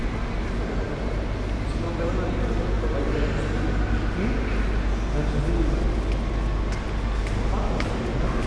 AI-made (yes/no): no